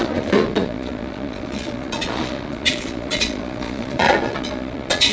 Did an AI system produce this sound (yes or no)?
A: yes